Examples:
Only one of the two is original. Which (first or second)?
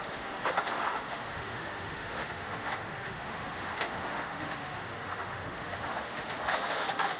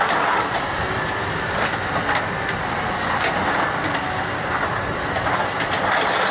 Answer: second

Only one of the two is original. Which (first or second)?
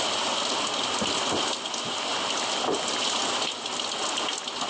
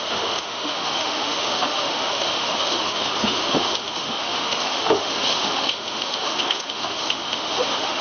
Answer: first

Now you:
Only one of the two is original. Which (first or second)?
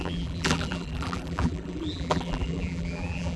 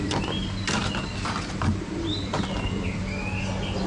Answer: second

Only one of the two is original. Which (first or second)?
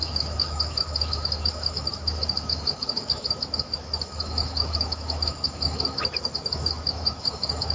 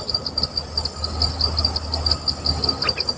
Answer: second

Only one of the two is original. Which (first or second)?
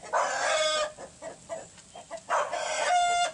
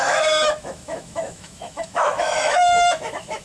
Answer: first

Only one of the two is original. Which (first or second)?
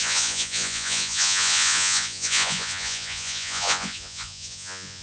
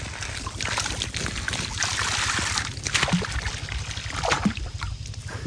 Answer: second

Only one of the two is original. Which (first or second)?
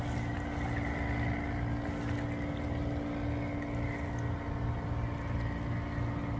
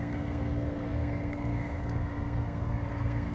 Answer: first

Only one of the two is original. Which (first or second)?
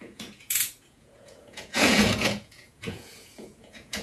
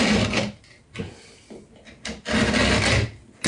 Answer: second